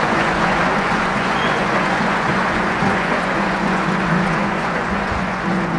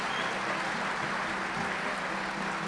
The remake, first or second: first